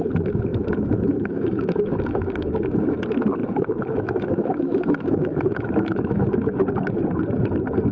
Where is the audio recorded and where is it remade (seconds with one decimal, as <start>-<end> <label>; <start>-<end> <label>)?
0.0-0.5 recorded; 0.5-3.0 remade; 3.0-3.4 recorded; 3.4-6.6 remade; 6.6-7.9 recorded